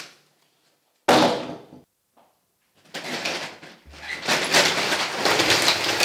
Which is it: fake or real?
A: real